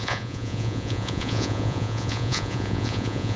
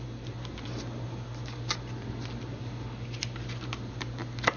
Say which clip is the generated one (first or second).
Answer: first